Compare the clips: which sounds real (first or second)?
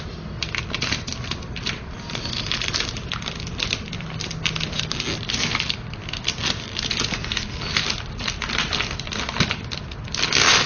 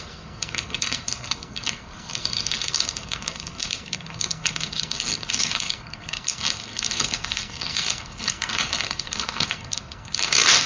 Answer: first